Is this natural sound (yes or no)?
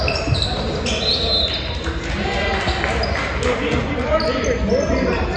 yes